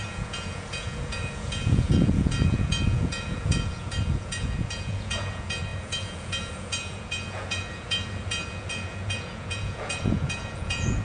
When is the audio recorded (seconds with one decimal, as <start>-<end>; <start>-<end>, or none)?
none